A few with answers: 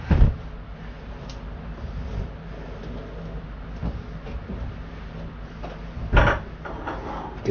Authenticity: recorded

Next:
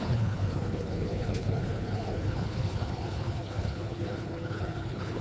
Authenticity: remade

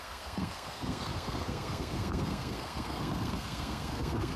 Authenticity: remade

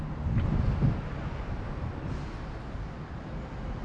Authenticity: recorded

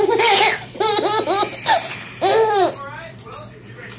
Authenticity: remade